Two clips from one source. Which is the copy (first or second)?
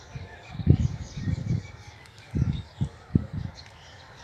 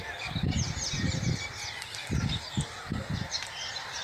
first